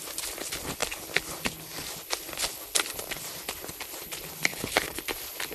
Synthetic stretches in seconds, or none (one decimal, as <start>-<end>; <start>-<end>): 4.5-5.0